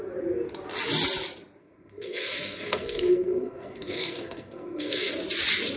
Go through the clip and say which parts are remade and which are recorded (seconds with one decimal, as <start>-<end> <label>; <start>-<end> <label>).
0.0-1.6 recorded; 1.6-5.1 remade; 5.1-5.8 recorded